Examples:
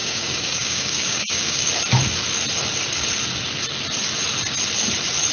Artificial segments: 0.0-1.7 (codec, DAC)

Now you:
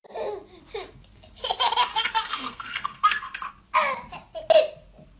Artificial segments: 1.9-3.5 (codec, SNAC)